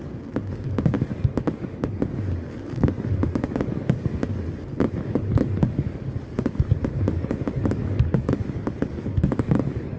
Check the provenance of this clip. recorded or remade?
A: remade